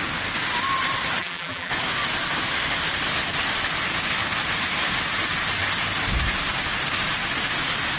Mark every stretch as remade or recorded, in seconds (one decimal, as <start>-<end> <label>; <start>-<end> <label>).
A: 0.0-1.2 recorded; 1.2-1.7 remade; 1.7-8.0 recorded